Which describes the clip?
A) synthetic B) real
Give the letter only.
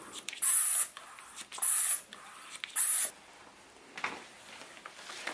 B